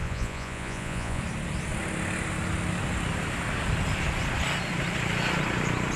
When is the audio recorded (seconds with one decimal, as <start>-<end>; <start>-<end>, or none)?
1.2-6.0